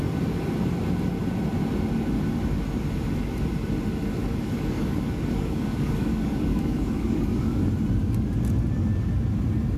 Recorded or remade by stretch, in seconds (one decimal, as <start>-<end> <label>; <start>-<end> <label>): 0.0-4.2 recorded; 4.2-7.6 remade; 7.6-9.8 recorded